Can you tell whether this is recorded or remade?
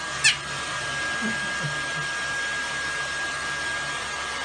recorded